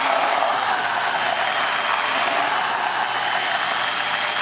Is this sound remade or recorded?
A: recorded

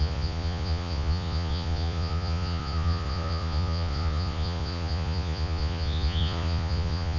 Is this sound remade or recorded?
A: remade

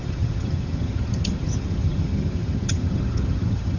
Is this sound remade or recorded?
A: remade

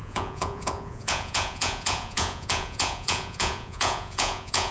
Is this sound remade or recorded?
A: remade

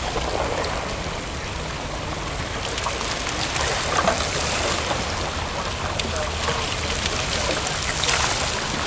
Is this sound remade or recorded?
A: recorded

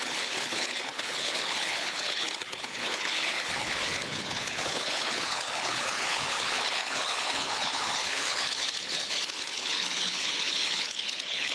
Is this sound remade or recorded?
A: remade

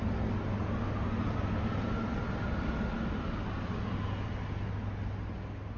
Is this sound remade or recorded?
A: recorded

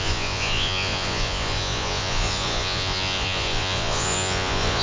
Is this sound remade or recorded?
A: remade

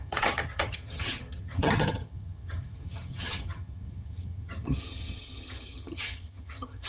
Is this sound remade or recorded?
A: remade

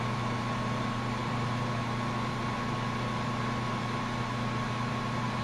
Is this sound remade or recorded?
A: recorded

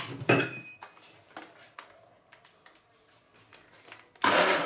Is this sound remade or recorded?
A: recorded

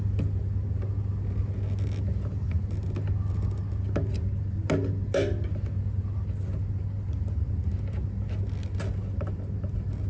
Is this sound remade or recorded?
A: recorded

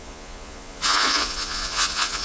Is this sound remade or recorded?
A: remade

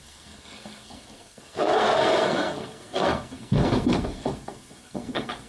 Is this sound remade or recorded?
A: remade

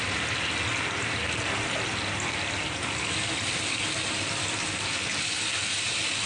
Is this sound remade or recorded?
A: recorded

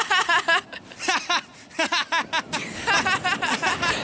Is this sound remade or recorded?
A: recorded